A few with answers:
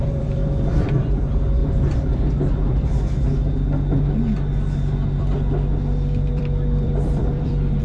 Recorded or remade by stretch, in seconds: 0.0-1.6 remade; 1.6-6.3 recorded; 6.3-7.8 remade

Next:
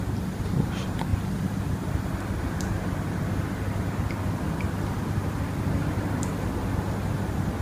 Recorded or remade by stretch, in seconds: 0.0-1.1 recorded; 1.1-2.6 remade; 2.6-7.6 recorded

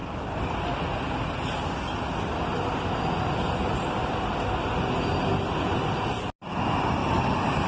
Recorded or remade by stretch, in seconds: 0.0-7.0 recorded; 7.0-7.7 remade

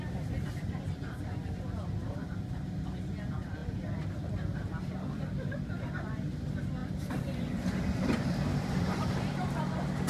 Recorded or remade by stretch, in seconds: 0.0-6.8 recorded; 6.8-9.6 remade; 9.6-10.1 recorded

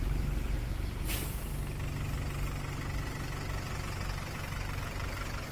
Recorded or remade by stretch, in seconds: 0.0-1.5 remade; 1.5-4.8 recorded; 4.8-5.5 remade